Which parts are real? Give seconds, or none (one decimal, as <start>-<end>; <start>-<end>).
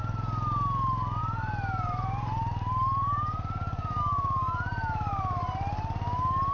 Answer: 0.0-1.2; 4.0-4.7; 5.7-6.5